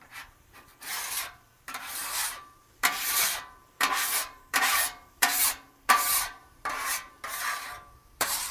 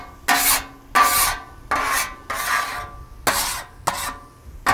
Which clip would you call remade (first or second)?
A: first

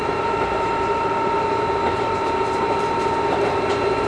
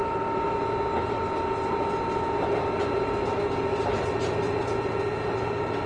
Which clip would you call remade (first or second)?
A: first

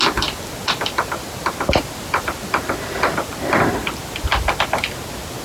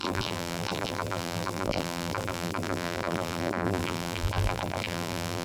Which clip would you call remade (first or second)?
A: second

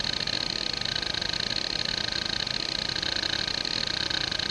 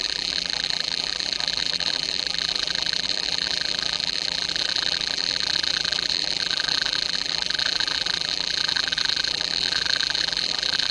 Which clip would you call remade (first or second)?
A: second